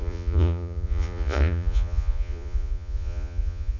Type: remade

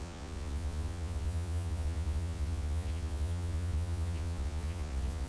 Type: remade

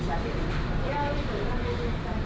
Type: recorded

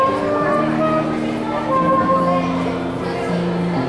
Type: recorded